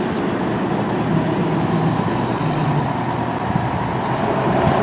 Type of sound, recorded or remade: recorded